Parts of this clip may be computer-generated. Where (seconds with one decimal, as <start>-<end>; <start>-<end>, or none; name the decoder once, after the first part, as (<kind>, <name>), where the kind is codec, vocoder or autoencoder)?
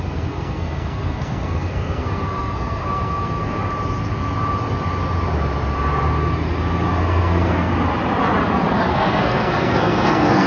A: 0.0-3.6 (codec, SNAC); 7.0-7.7; 8.9-10.5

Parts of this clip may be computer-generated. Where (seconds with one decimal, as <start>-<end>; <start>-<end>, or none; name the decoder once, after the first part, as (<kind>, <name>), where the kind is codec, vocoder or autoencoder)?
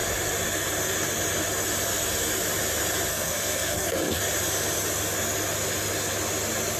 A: 3.1-4.2 (codec, SNAC)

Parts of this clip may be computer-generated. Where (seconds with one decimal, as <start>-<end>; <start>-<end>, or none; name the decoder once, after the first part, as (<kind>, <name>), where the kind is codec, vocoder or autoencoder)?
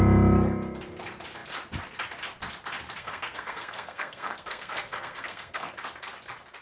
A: 3.0-5.7 (codec, SNAC)